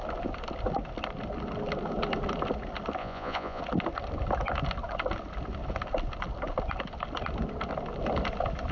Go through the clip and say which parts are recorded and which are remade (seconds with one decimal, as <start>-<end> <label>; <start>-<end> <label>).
0.0-3.0 recorded; 3.0-3.6 remade; 3.6-8.7 recorded